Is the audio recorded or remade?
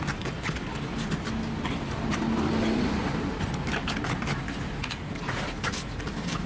recorded